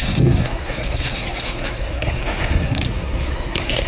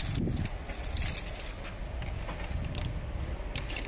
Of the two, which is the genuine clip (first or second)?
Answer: second